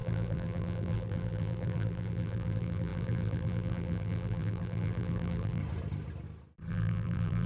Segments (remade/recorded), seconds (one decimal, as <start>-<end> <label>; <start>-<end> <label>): 0.0-5.6 remade; 5.6-6.7 recorded; 6.7-7.5 remade